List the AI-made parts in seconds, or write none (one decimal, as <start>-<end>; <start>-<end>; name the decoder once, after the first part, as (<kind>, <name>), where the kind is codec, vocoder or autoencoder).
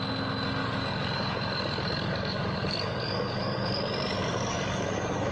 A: 0.6-3.8 (codec, DAC); 4.2-5.3